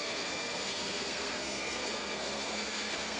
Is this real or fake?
fake